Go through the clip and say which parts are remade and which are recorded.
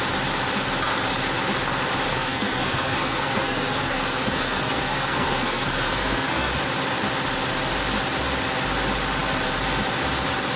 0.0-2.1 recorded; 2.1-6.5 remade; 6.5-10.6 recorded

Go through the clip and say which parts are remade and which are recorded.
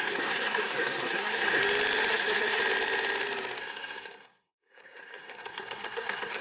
0.0-1.6 remade; 1.6-2.1 recorded; 2.1-2.6 remade; 2.6-3.6 recorded; 3.6-6.4 remade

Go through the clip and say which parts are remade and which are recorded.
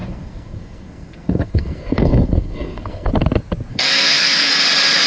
0.0-3.1 remade; 3.1-3.7 recorded; 3.7-4.5 remade; 4.5-5.1 recorded